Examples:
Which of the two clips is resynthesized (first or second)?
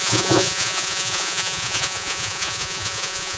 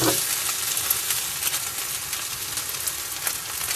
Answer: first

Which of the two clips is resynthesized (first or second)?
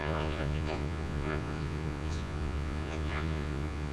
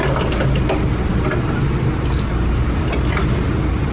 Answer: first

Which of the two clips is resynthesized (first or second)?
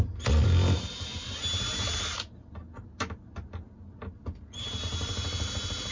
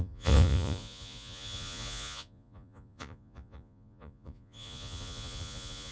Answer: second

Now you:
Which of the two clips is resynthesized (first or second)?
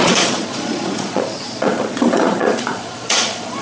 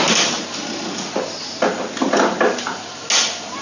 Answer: first